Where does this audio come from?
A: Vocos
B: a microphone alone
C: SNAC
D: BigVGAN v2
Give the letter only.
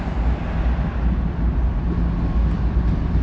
B